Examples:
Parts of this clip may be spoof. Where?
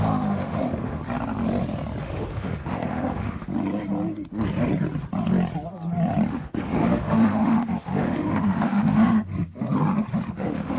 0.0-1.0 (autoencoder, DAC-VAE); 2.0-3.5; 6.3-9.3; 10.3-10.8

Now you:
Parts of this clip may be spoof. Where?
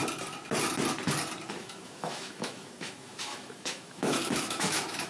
1.5-5.1 (autoencoder, DAC-VAE)